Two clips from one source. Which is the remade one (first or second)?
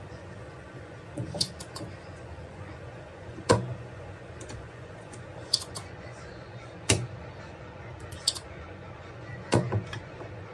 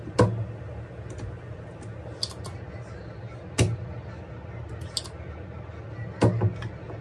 first